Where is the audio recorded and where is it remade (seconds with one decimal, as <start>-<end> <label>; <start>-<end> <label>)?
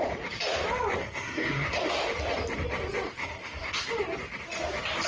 0.0-1.0 recorded; 1.0-1.8 remade; 1.8-3.2 recorded; 3.2-3.8 remade; 3.8-5.1 recorded